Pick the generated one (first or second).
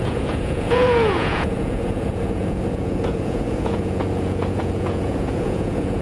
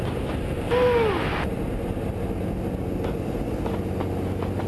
first